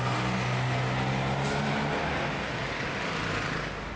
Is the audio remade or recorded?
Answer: recorded